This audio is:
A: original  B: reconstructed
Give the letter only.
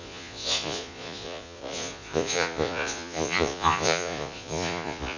B